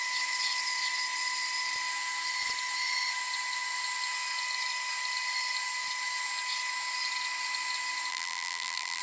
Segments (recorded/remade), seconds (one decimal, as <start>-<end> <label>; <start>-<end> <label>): 0.0-8.1 recorded; 8.1-9.0 remade